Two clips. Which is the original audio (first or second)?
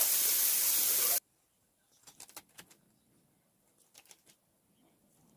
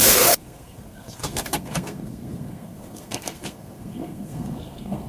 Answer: first